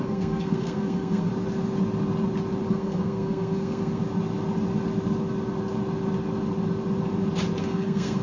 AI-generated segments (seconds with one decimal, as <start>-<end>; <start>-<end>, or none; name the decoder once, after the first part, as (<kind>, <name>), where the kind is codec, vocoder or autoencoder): 0.0-1.3 (codec, SNAC); 2.7-4.0; 7.6-8.2